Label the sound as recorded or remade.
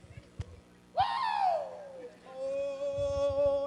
recorded